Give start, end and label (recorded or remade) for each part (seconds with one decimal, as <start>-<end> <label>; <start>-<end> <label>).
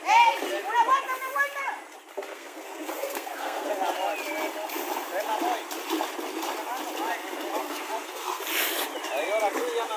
0.0-2.3 recorded; 2.3-3.7 remade; 3.7-7.6 recorded; 7.6-8.4 remade; 8.4-10.0 recorded